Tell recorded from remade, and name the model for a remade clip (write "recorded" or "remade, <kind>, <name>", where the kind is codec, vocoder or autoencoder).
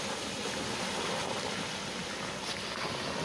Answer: recorded